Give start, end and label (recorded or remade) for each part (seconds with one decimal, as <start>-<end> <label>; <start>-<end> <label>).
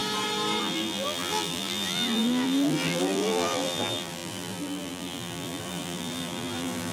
0.0-0.6 recorded; 0.6-6.9 remade